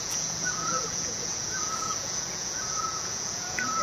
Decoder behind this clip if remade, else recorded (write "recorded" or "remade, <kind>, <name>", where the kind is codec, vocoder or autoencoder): remade, vocoder, Vocos